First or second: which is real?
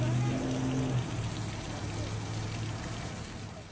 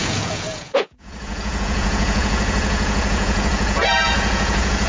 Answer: first